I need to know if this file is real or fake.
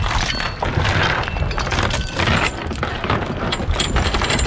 real